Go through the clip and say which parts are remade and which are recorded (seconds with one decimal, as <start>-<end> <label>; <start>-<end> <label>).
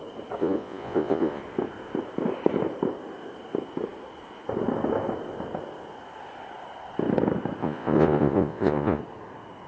0.0-0.4 recorded; 0.4-1.4 remade; 1.4-7.6 recorded; 7.6-9.0 remade; 9.0-9.7 recorded